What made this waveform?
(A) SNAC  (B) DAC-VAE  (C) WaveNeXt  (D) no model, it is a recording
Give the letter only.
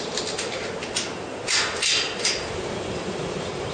D